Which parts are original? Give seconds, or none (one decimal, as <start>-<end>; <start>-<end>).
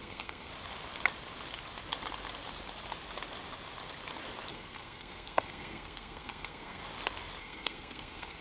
0.5-4.5; 6.8-7.4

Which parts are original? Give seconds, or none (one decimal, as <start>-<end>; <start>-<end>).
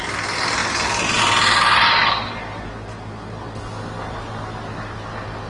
0.0-5.5